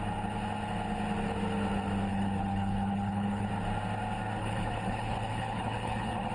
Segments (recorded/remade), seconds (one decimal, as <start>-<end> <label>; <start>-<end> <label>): 0.0-2.1 recorded; 2.1-3.5 remade; 3.5-4.4 recorded; 4.4-6.3 remade